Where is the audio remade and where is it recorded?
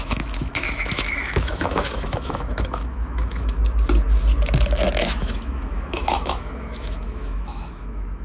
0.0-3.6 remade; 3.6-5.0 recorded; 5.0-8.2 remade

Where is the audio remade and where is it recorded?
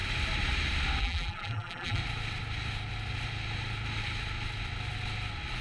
0.0-1.0 recorded; 1.0-2.0 remade; 2.0-5.6 recorded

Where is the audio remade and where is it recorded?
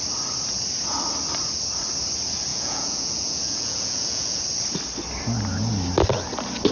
0.0-2.5 recorded; 2.5-4.4 remade; 4.4-6.7 recorded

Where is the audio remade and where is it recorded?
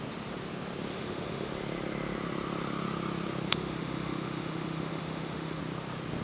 0.0-0.9 recorded; 0.9-1.5 remade; 1.5-3.5 recorded; 3.5-5.6 remade; 5.6-6.2 recorded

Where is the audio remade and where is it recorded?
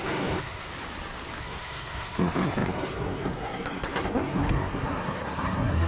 0.0-0.7 remade; 0.7-1.4 recorded; 1.4-5.9 remade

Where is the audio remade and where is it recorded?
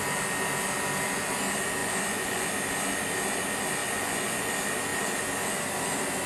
0.0-1.8 recorded; 1.8-2.5 remade; 2.5-3.8 recorded; 3.8-4.5 remade; 4.5-6.3 recorded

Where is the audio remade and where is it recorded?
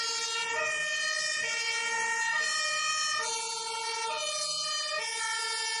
0.0-5.8 recorded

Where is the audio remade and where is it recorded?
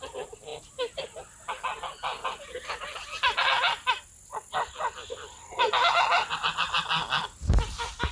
0.0-8.1 recorded